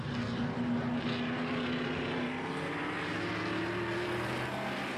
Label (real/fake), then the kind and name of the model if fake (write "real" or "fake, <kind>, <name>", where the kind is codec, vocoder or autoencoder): real